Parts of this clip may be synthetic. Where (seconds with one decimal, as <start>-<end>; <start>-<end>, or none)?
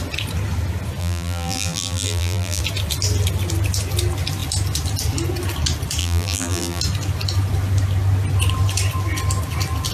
1.0-2.6; 6.0-6.8